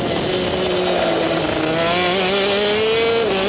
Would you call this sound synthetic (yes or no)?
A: no